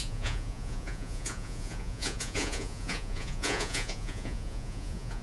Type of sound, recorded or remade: remade